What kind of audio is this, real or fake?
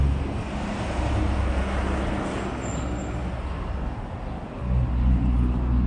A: real